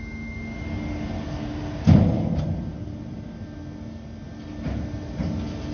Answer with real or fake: real